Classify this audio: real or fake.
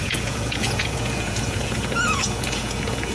fake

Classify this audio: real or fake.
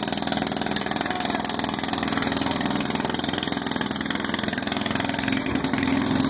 real